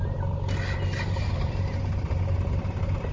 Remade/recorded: recorded